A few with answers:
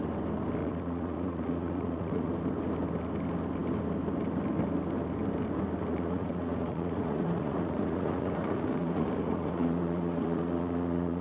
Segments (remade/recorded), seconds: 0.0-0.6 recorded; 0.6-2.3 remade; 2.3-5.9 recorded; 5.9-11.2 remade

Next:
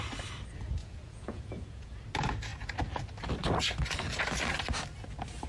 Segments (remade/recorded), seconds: 0.0-0.8 recorded; 0.8-2.0 remade; 2.0-5.5 recorded

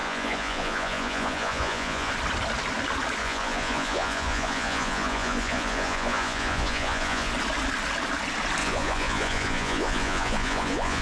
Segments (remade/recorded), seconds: 0.0-2.1 remade; 2.1-3.2 recorded; 3.2-7.3 remade; 7.3-8.6 recorded; 8.6-11.0 remade

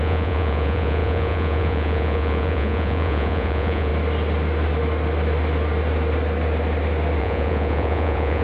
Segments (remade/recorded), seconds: 0.0-3.9 remade; 3.9-7.2 recorded; 7.2-8.4 remade

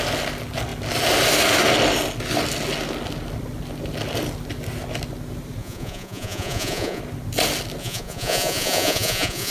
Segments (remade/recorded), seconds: 0.0-5.6 recorded; 5.6-7.0 remade; 7.0-7.8 recorded; 7.8-9.5 remade

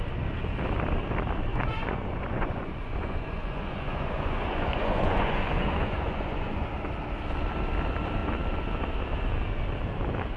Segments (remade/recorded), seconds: 0.0-1.5 recorded; 1.5-6.6 remade; 6.6-10.4 recorded

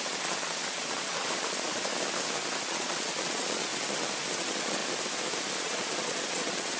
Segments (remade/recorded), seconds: 0.0-1.9 remade; 1.9-2.6 recorded; 2.6-3.7 remade; 3.7-4.3 recorded; 4.3-4.8 remade; 4.8-5.6 recorded; 5.6-6.8 remade

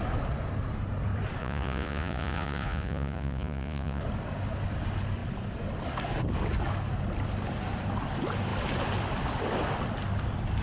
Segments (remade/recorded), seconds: 0.0-1.4 recorded; 1.4-4.0 remade; 4.0-10.6 recorded